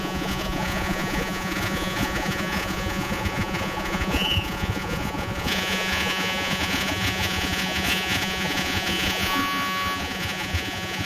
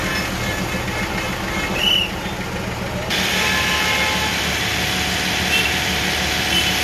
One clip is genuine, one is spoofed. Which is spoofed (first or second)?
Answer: first